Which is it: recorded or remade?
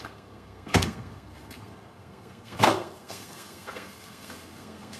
remade